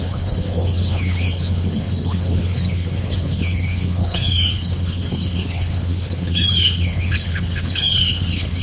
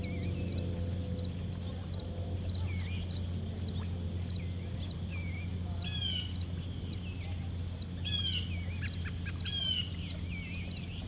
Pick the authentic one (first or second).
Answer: second